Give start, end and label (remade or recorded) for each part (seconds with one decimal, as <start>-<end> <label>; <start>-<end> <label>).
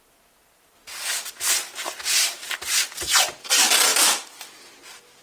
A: 0.0-5.2 recorded